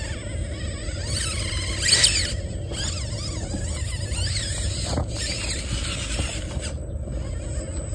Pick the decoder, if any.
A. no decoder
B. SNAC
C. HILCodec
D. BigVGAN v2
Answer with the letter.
A